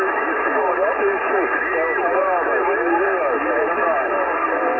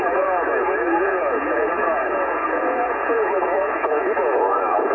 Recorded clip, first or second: first